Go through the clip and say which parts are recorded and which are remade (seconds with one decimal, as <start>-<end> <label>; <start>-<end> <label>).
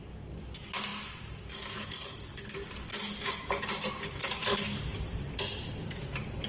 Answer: 0.0-6.5 recorded